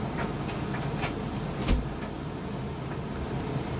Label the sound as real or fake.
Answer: real